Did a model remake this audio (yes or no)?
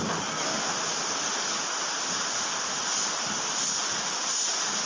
no